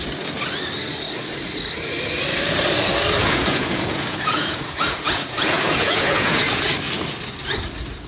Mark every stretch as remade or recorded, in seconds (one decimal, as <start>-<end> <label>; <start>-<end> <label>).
0.0-3.2 recorded; 3.2-6.7 remade; 6.7-8.1 recorded